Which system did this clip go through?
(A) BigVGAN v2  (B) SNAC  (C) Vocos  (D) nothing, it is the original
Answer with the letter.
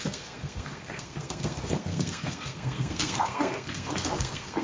B